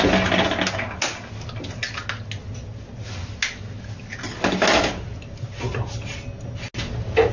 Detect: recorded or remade recorded